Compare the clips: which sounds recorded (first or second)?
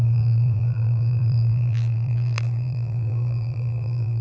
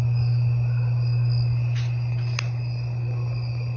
second